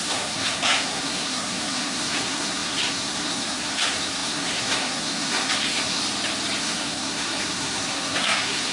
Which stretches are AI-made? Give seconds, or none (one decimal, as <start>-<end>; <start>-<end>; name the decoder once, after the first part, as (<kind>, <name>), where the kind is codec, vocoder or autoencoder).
0.0-6.0 (codec, SNAC); 6.6-8.7